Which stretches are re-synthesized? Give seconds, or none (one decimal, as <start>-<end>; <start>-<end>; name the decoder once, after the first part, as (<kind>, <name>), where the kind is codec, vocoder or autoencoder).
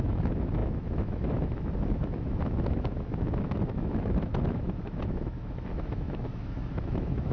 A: 0.0-7.3 (autoencoder, DAC-VAE)